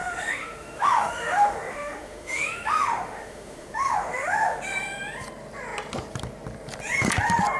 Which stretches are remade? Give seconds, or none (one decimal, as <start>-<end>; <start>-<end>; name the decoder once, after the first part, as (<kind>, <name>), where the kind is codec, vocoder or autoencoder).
0.0-4.6 (autoencoder, DAC-VAE)